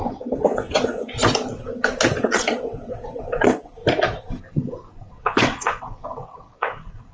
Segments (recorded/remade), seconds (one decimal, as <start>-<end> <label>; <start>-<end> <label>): 0.0-1.2 remade; 1.2-2.2 recorded; 2.2-3.8 remade; 3.8-5.1 recorded; 5.1-7.1 remade